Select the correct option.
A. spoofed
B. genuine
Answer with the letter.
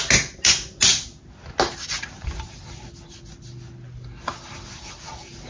B